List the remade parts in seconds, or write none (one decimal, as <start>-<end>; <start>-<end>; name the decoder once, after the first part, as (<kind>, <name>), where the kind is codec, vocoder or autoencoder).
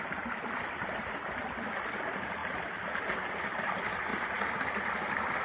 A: none